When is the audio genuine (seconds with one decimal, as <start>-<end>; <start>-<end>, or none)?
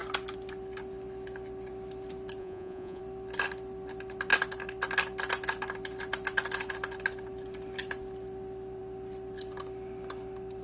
0.0-2.4; 3.0-10.6